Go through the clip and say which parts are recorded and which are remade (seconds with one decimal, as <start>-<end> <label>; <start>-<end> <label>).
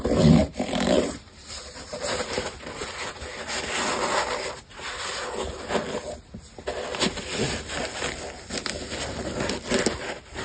0.0-0.4 recorded; 0.4-2.4 remade; 2.4-10.4 recorded